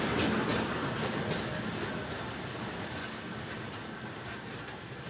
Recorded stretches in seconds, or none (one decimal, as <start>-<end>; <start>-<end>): 0.0-3.0; 3.5-5.1